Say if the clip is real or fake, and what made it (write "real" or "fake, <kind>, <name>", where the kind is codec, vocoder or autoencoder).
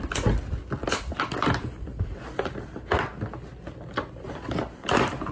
real